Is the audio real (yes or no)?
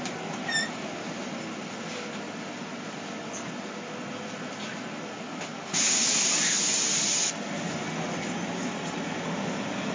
yes